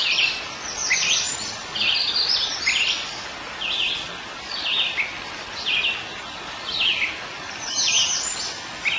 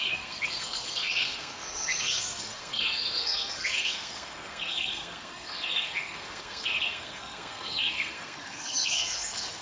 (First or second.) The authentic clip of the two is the first